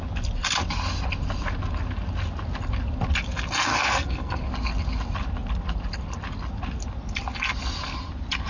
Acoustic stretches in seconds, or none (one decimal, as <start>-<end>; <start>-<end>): 0.0-3.7; 4.4-8.5